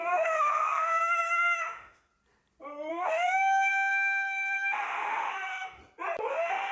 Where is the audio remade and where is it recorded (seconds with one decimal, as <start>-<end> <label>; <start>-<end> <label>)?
0.0-2.1 remade; 2.1-2.9 recorded; 2.9-5.8 remade; 5.8-6.3 recorded; 6.3-6.7 remade

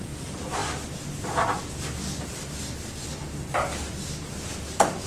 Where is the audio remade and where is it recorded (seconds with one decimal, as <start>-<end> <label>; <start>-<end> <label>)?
0.0-5.1 recorded

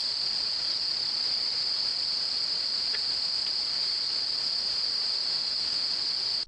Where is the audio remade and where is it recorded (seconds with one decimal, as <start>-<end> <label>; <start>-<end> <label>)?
0.0-5.3 recorded; 5.3-5.9 remade; 5.9-6.5 recorded

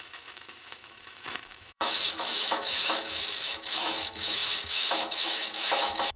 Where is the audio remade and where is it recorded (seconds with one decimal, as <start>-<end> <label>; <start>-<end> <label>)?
0.0-6.2 remade

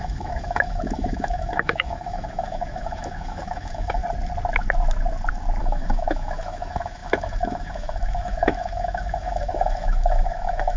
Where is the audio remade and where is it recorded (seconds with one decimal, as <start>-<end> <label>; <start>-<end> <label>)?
0.0-4.0 remade; 4.0-5.6 recorded; 5.6-10.8 remade

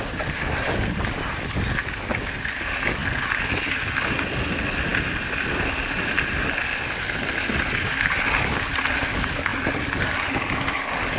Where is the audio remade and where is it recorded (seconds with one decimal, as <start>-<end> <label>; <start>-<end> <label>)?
0.0-11.2 recorded

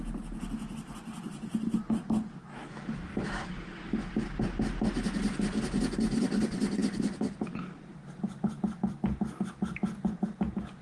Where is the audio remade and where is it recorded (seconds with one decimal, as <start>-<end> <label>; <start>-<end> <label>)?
0.0-2.4 recorded; 2.4-3.5 remade; 3.5-10.8 recorded

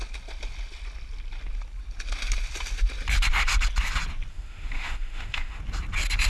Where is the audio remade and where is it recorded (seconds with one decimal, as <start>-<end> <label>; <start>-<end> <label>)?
0.0-4.3 recorded; 4.3-5.6 remade; 5.6-6.3 recorded